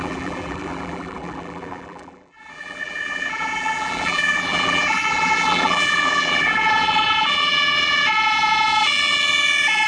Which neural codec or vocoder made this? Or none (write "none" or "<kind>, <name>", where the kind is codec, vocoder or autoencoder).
vocoder, BigVGAN v2